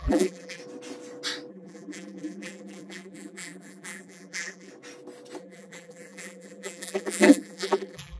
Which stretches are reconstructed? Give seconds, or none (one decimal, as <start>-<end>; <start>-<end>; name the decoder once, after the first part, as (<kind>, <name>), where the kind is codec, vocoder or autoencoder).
0.0-0.6 (vocoder, BigVGAN v2); 1.5-4.7; 5.4-8.2